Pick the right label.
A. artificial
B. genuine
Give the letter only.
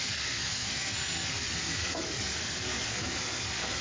A